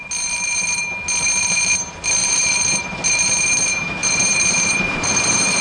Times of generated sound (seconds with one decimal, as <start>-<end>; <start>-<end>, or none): 2.2-2.8; 4.0-5.6